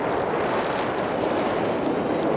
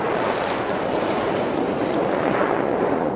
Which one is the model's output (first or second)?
second